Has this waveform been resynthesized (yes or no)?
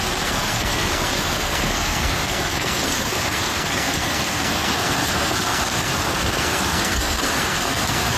yes